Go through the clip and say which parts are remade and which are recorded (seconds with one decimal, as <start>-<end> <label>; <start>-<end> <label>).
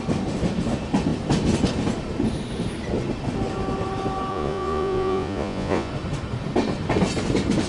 0.0-4.3 recorded; 4.3-5.9 remade; 5.9-7.7 recorded